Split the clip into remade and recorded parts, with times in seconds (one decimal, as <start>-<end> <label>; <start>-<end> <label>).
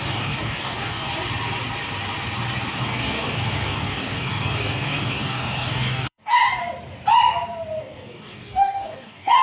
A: 0.0-1.1 remade; 1.1-2.7 recorded; 2.7-6.6 remade; 6.6-7.8 recorded; 7.8-9.4 remade